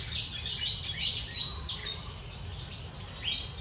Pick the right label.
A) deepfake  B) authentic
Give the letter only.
B